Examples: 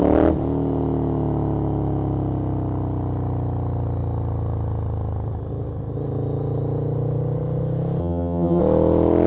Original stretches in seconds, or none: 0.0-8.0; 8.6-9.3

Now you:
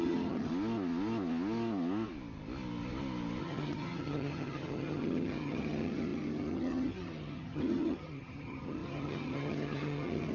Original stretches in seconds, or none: 0.5-3.4